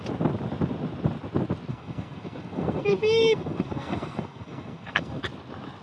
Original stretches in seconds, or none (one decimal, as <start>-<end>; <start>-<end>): 0.0-1.7; 5.2-5.8